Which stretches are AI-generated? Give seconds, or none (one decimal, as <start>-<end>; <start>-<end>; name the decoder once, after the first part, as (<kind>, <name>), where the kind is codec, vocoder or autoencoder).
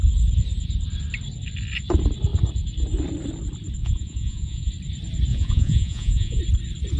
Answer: 3.8-4.7 (vocoder, Vocos); 5.3-6.4